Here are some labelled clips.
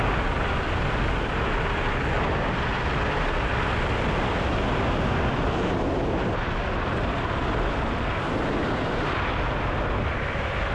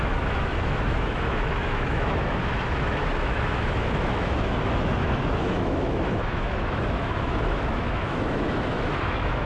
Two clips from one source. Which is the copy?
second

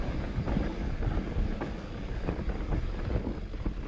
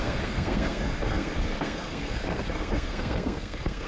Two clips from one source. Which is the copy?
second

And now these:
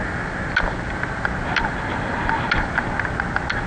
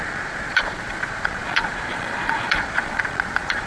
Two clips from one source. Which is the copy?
second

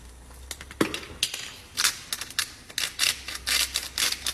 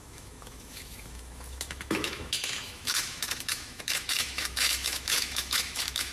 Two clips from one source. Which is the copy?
second